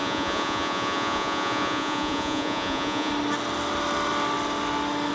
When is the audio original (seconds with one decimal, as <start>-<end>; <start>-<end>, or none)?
3.1-5.1